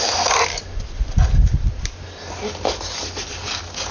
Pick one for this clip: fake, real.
real